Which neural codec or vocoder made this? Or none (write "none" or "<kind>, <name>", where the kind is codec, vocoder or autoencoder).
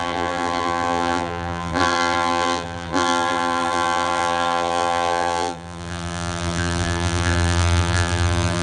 vocoder, BigVGAN v2